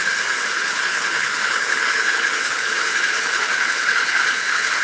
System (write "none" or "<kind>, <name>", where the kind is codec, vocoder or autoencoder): codec, HILCodec